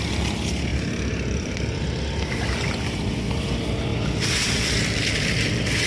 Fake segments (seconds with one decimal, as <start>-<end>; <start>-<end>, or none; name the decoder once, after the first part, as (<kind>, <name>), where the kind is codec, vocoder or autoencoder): 0.7-1.8 (vocoder, BigVGAN v2); 3.9-5.9